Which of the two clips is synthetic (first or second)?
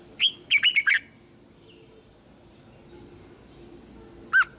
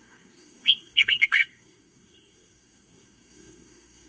second